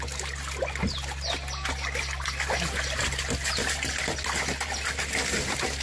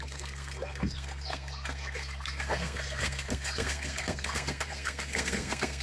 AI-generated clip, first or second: second